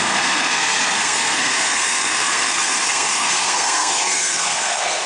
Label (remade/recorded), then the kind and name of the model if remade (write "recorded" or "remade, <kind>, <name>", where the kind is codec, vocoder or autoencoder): remade, codec, SNAC